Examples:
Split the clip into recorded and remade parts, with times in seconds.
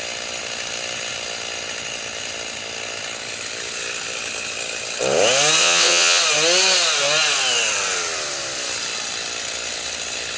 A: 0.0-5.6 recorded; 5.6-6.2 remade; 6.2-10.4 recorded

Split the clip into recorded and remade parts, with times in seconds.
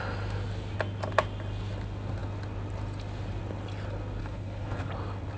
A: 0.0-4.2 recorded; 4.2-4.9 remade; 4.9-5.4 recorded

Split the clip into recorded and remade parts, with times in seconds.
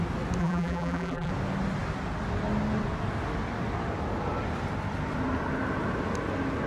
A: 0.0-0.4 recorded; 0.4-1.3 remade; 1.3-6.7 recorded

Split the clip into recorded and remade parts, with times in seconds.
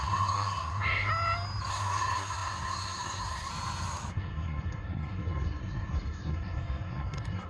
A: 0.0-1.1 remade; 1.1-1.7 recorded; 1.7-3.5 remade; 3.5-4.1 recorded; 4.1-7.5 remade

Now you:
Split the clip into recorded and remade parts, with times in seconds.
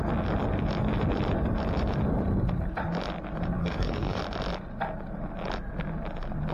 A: 0.0-3.6 recorded; 3.6-4.2 remade; 4.2-6.5 recorded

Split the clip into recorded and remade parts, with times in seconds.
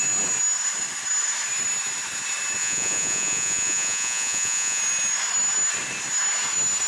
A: 0.0-2.6 recorded; 2.6-4.8 remade; 4.8-6.9 recorded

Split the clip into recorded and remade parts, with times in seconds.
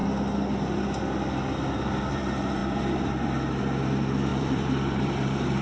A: 0.0-2.1 recorded; 2.1-5.6 remade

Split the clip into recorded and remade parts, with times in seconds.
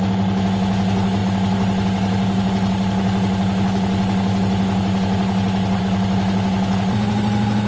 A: 0.0-7.7 recorded